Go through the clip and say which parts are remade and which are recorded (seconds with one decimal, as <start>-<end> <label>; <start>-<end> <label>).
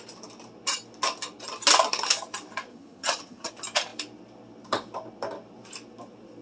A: 0.0-2.7 recorded; 2.7-3.5 remade; 3.5-6.4 recorded